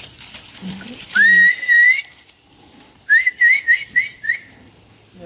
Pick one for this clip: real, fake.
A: fake